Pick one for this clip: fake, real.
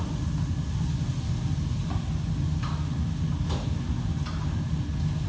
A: real